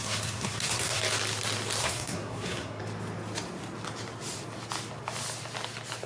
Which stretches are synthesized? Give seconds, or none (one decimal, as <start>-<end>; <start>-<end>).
0.0-1.0; 1.8-2.8